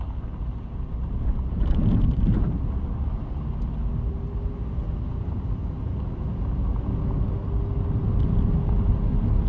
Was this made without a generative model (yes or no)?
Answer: yes